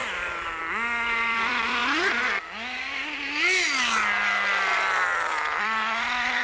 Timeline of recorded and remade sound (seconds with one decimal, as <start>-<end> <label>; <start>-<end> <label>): 0.0-0.6 recorded; 0.6-1.8 remade; 1.8-5.6 recorded; 5.6-6.4 remade